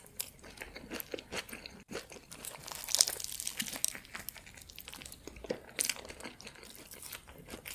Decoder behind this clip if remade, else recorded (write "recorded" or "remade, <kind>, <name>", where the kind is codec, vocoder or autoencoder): recorded